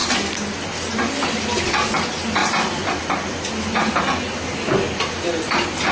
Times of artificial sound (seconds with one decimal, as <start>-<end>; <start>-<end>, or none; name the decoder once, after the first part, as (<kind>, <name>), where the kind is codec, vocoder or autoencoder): none